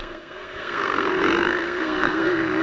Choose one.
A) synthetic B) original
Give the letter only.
A